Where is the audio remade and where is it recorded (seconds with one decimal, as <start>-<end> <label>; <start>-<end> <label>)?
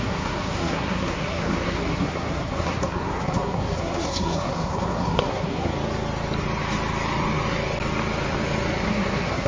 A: 0.0-5.7 remade; 5.7-8.8 recorded; 8.8-9.5 remade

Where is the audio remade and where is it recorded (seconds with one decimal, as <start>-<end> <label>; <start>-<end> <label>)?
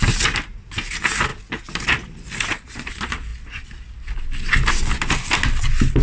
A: 0.0-1.3 recorded; 1.3-2.9 remade; 2.9-6.0 recorded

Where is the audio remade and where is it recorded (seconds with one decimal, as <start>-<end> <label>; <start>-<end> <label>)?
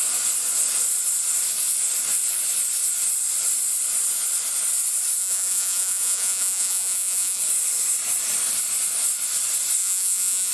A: 0.0-5.2 recorded; 5.2-7.4 remade; 7.4-9.8 recorded; 9.8-10.5 remade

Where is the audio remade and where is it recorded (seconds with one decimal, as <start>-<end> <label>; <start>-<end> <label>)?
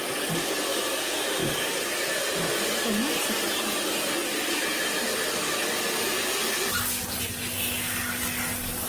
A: 0.0-4.2 recorded; 4.2-5.5 remade; 5.5-8.9 recorded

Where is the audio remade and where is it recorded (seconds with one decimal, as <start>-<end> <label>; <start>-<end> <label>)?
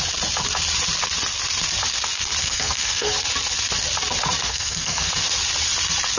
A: 0.0-2.4 recorded; 2.4-3.1 remade; 3.1-4.4 recorded; 4.4-5.1 remade; 5.1-6.2 recorded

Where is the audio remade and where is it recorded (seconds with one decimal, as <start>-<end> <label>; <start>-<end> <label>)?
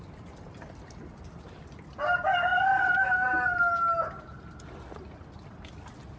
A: 0.0-6.2 recorded